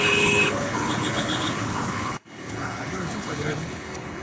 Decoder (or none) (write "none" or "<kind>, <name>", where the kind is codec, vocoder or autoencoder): codec, HILCodec